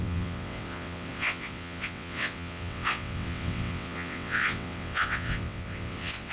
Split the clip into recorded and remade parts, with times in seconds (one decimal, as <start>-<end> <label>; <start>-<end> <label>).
0.0-6.3 remade